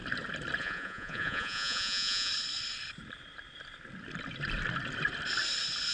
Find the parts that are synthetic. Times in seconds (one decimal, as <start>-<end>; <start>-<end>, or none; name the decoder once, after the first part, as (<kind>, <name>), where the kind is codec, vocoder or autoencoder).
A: 0.6-2.3 (vocoder, Vocos)